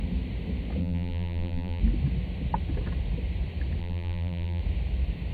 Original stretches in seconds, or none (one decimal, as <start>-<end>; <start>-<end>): 0.0-0.8; 1.8-3.8; 4.6-5.3